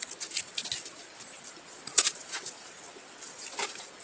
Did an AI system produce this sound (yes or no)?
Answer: no